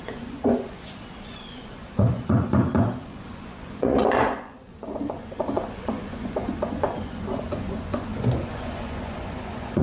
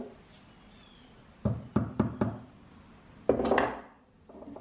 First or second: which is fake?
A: first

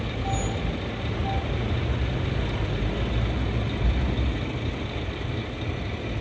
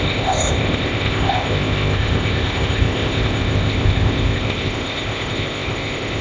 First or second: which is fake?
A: second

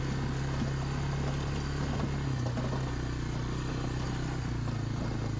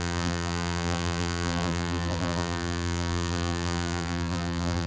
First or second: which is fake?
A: second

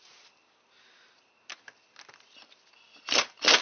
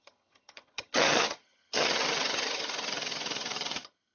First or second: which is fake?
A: second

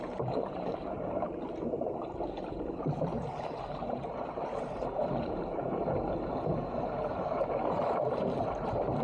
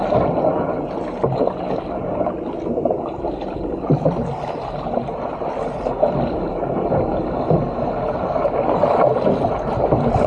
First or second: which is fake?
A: first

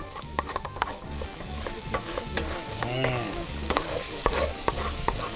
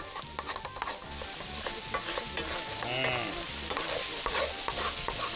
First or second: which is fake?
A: first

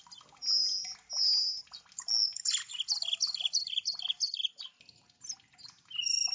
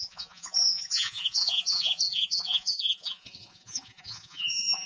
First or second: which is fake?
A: second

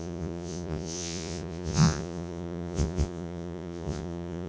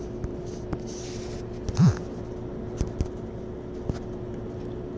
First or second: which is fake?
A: first